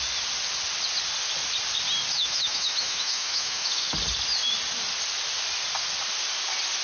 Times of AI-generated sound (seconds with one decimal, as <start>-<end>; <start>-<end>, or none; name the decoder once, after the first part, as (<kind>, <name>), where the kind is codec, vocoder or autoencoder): 2.1-3.9 (autoencoder, DAC-VAE)